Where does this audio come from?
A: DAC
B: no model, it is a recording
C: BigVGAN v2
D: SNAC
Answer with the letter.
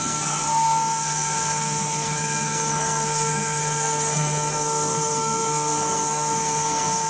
D